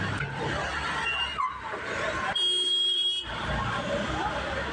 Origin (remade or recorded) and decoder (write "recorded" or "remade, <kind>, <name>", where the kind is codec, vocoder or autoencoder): recorded